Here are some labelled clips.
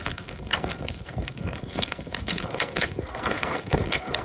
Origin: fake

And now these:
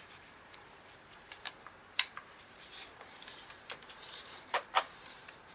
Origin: fake